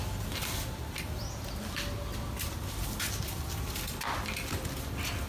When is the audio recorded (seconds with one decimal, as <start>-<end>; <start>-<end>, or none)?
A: 0.0-5.3